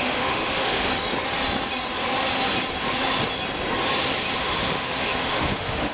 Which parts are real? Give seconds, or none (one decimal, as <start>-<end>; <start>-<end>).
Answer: 0.9-4.4